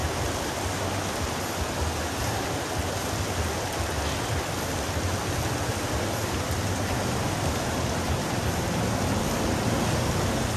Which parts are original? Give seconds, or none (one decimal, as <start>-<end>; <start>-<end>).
0.0-10.6